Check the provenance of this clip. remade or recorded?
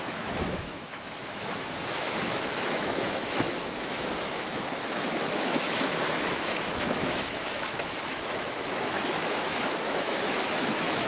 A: remade